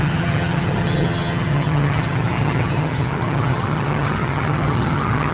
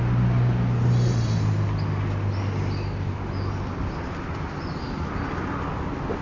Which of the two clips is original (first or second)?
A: second